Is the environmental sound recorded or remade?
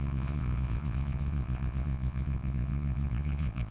remade